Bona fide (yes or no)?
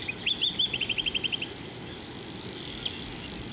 yes